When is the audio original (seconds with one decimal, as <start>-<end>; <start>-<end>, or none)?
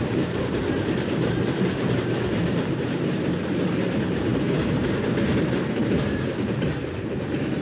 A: none